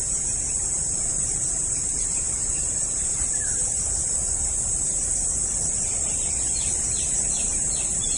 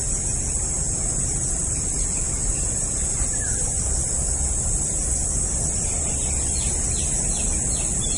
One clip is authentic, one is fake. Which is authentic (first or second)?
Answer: second